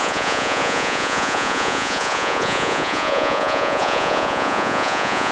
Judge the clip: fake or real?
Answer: fake